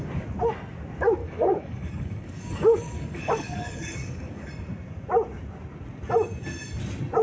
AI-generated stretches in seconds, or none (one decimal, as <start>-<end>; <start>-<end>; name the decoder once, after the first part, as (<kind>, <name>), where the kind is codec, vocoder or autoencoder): 1.2-4.5 (codec, DAC)